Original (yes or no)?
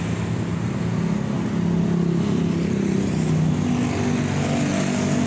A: yes